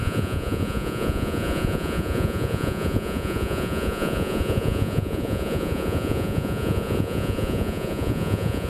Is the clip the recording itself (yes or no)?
no